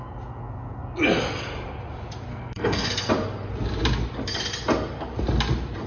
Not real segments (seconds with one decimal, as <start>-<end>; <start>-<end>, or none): 2.3-3.1